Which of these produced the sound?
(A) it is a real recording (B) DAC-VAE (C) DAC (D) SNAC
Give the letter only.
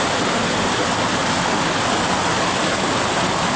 A